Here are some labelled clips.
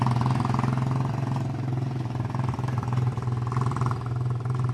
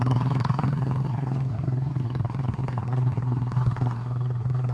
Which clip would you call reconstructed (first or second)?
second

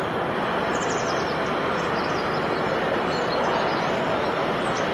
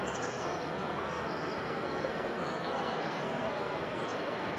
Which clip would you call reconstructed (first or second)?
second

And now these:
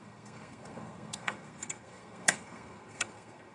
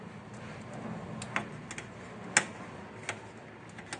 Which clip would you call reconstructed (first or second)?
first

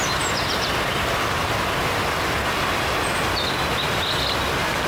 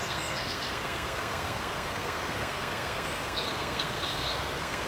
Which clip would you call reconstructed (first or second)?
second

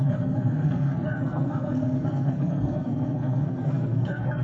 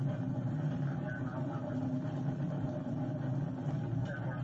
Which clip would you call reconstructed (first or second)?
first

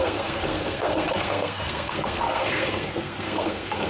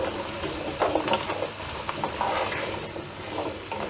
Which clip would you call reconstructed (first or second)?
first